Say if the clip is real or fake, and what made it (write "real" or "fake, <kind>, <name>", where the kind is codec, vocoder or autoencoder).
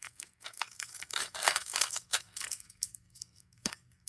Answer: fake, codec, SNAC